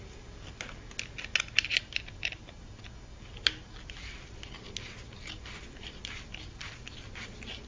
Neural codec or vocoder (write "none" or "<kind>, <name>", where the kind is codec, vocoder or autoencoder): none